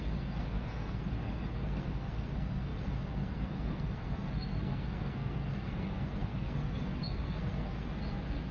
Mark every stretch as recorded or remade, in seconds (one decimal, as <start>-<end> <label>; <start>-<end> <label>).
0.0-8.5 remade

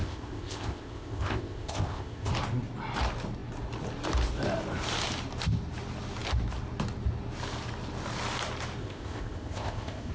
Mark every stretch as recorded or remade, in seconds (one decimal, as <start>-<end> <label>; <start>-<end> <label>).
0.0-2.3 remade; 2.3-8.8 recorded; 8.8-10.1 remade

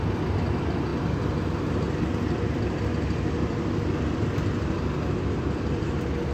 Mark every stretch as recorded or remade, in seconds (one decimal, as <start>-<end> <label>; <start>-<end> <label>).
0.0-6.3 recorded